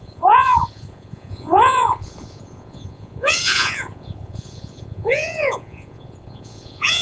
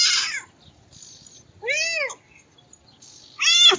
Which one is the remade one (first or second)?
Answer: first